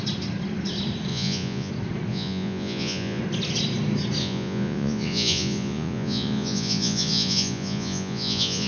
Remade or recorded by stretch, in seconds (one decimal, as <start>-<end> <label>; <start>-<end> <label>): 0.0-1.1 recorded; 1.1-1.7 remade; 1.7-2.1 recorded; 2.1-3.2 remade; 3.2-4.2 recorded; 4.2-8.7 remade